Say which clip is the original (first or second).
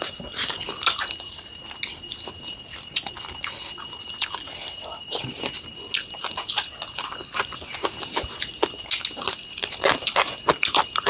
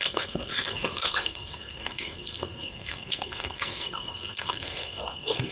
first